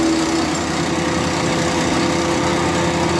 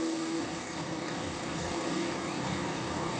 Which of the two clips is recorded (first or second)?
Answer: first